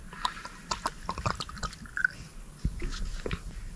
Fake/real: real